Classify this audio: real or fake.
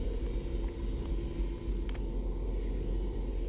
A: real